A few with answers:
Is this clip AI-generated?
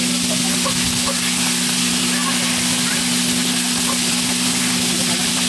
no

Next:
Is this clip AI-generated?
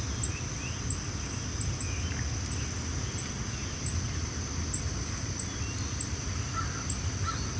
no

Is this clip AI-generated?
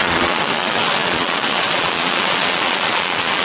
yes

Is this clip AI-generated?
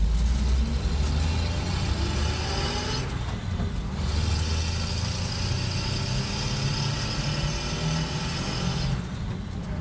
no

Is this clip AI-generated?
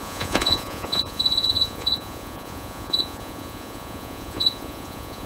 yes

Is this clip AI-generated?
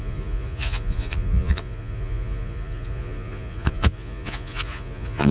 yes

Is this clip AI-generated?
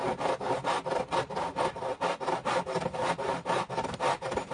no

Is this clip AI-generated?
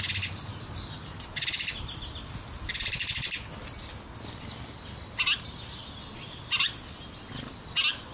no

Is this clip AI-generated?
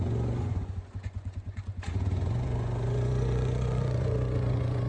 yes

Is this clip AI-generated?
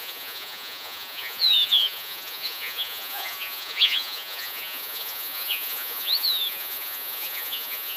yes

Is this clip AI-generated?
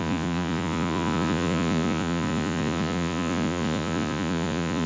yes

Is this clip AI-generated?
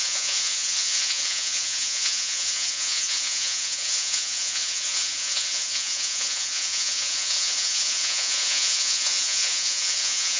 yes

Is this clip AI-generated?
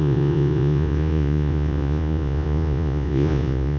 yes